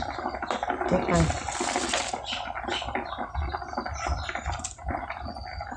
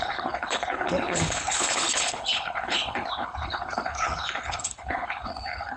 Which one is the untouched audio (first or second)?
first